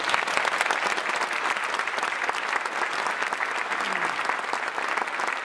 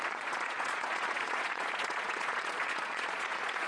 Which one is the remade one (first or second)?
second